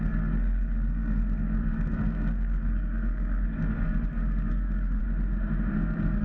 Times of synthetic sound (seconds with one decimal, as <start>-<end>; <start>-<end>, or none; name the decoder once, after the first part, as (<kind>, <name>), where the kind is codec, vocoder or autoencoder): 0.0-5.0 (codec, SNAC); 5.7-6.2